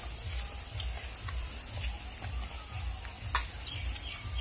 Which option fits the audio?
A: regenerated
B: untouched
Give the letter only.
B